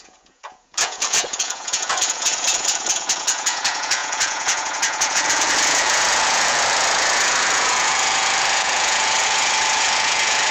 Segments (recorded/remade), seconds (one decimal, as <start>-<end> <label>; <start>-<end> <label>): 0.0-10.5 remade